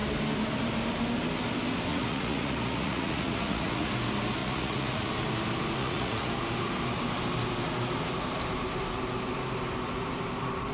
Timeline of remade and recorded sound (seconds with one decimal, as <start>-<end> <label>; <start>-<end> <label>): 0.0-1.9 recorded; 1.9-3.9 remade; 3.9-4.4 recorded; 4.4-5.1 remade; 5.1-5.8 recorded; 5.8-6.3 remade; 6.3-10.7 recorded